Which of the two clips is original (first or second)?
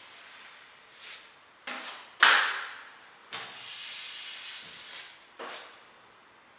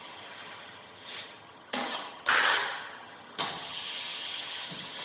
first